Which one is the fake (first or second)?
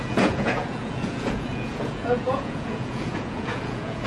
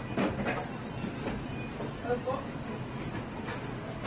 first